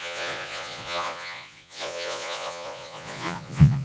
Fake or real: fake